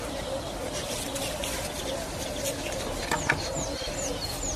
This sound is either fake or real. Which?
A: real